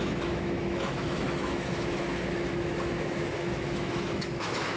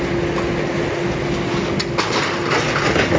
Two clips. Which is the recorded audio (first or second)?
second